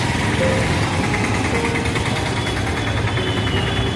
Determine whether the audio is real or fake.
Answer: real